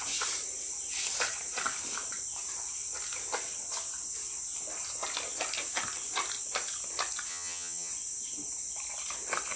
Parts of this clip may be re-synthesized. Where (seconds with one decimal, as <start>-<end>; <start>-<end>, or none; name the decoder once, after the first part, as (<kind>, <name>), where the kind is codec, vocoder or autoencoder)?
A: 7.3-7.9 (vocoder, HiFi-GAN)

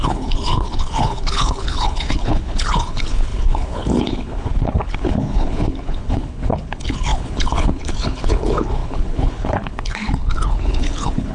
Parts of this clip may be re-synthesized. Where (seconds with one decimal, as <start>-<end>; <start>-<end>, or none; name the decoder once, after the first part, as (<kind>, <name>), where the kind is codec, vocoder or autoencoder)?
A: 0.0-11.3 (codec, HILCodec)